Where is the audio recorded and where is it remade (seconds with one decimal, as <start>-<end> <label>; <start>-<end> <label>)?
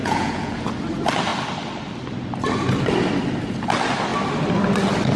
0.0-0.6 remade; 0.6-5.2 recorded